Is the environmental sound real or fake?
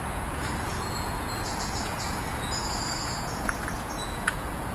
fake